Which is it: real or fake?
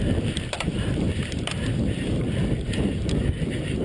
fake